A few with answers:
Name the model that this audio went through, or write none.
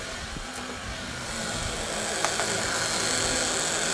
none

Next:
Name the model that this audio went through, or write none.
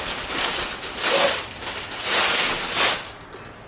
none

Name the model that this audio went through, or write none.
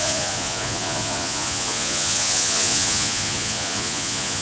vocoder, Vocos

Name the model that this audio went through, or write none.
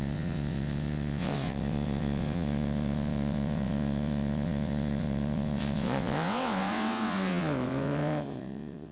vocoder, WaveNeXt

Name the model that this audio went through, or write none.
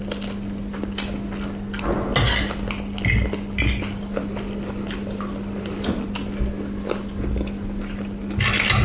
none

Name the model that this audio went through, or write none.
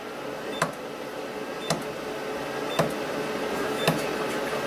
none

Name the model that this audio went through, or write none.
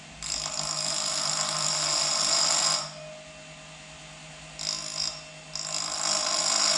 none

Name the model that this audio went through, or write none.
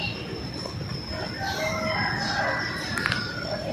none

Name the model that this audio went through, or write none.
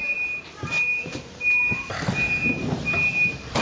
none